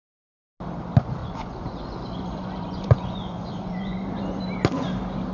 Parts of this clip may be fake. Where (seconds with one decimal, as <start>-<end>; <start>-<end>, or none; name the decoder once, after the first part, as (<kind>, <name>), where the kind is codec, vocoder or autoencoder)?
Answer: 1.2-4.4 (vocoder, Vocos)

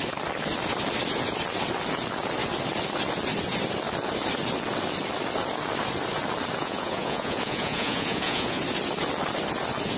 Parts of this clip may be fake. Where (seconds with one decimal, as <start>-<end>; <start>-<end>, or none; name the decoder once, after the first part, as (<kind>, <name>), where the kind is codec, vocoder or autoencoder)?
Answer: 6.6-8.6 (vocoder, Vocos)

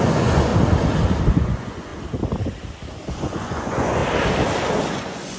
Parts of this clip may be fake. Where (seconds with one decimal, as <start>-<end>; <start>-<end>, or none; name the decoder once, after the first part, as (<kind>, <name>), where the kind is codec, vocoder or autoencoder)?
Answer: 0.0-0.5 (vocoder, Vocos); 1.3-1.9; 3.1-4.0; 4.9-5.4

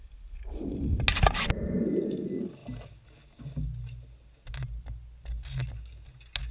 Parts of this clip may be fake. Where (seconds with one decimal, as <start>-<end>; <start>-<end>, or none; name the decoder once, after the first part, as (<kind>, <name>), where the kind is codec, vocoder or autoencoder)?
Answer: none

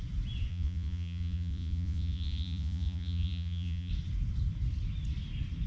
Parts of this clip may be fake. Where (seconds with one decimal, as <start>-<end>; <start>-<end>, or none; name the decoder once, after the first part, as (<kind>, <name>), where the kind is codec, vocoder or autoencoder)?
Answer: 0.5-3.9 (vocoder, Vocos)

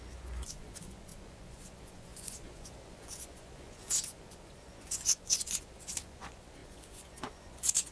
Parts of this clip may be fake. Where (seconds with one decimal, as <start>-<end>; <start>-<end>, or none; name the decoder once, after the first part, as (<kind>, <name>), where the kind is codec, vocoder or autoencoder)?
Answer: 0.0-7.9 (vocoder, Vocos)

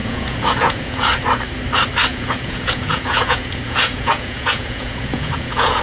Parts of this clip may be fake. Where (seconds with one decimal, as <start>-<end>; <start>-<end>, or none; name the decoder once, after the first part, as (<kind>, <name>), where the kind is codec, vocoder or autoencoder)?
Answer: 0.0-1.2 (vocoder, Vocos); 2.1-5.8

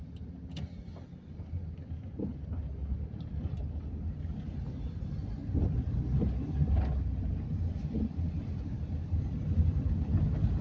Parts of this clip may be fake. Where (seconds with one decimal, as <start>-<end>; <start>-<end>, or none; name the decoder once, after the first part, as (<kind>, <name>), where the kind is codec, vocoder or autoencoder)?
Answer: none